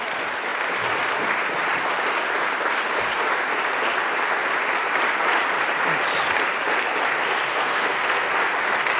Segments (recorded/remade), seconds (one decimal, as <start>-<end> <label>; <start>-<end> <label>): 0.0-7.5 recorded; 7.5-8.3 remade; 8.3-9.0 recorded